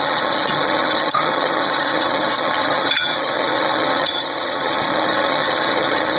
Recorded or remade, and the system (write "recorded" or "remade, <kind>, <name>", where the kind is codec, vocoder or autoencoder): remade, vocoder, HiFi-GAN